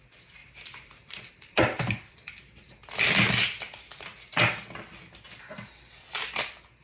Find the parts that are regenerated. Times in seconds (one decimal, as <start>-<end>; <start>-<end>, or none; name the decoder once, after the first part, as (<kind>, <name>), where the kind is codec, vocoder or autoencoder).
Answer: 0.4-3.0 (vocoder, BigVGAN v2)